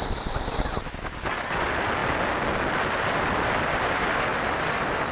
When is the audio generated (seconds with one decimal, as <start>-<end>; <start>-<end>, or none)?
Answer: 0.0-2.0; 3.6-5.1